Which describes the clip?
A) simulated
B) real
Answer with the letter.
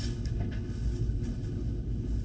A